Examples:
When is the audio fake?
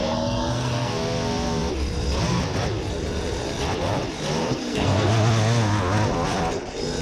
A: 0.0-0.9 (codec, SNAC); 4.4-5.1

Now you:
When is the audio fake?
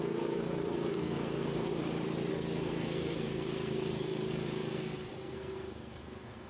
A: 0.0-1.7 (codec, SNAC); 2.3-6.5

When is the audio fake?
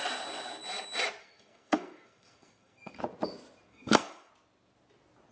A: 1.2-3.0 (codec, SNAC); 3.7-4.3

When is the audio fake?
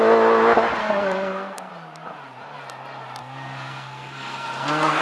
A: 0.8-1.7 (codec, SNAC); 3.2-5.0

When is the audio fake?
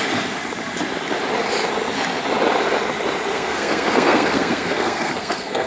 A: 3.3-5.7 (codec, SNAC)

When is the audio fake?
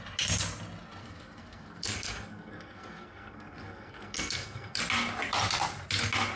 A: 1.0-4.8 (codec, SNAC)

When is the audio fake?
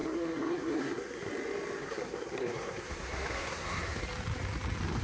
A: 0.0-1.3 (codec, SNAC); 1.8-4.0